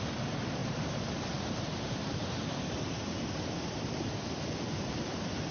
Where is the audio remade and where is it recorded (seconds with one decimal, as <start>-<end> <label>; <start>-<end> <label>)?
0.0-0.6 recorded; 0.6-3.9 remade; 3.9-5.5 recorded